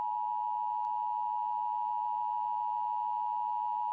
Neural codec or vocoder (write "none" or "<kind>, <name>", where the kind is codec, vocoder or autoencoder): none